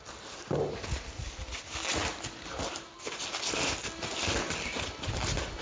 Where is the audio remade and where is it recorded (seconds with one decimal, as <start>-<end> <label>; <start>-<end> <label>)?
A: 0.0-5.6 recorded